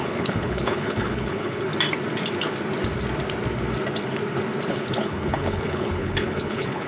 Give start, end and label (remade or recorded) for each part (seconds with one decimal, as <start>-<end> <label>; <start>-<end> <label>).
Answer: 0.0-1.7 remade; 1.7-4.7 recorded; 4.7-6.9 remade